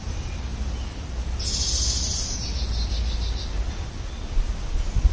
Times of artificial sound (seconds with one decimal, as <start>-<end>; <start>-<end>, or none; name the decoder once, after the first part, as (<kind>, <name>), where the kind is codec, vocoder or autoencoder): none